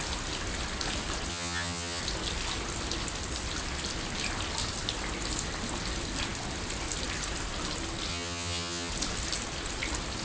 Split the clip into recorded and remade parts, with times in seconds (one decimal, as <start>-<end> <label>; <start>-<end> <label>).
0.0-1.3 recorded; 1.3-2.0 remade; 2.0-8.1 recorded; 8.1-8.9 remade; 8.9-10.2 recorded